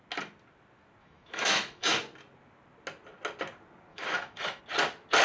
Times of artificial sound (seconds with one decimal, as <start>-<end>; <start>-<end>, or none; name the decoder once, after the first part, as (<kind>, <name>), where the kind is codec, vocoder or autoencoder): 1.0-1.9 (autoencoder, DAC-VAE); 3.9-4.6